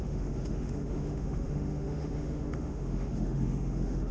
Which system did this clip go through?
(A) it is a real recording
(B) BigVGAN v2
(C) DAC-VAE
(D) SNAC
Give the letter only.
C